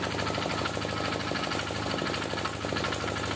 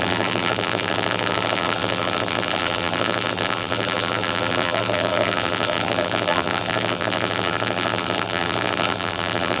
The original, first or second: first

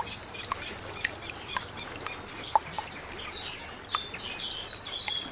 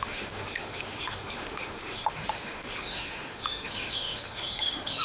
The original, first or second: first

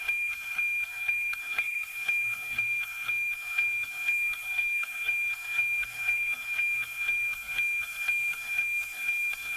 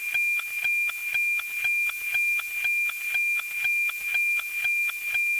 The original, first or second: second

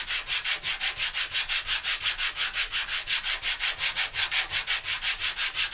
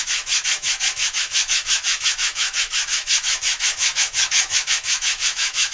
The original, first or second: first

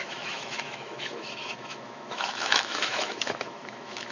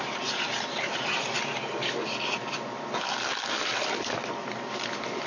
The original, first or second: second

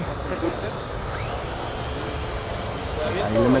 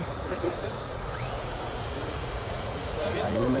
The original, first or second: first